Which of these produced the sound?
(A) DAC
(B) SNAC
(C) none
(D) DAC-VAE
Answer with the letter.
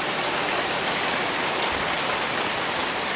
C